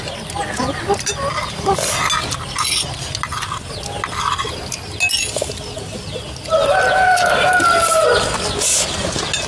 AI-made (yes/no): no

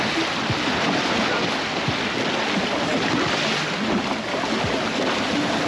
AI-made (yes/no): no